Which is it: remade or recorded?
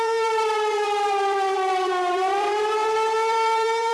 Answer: remade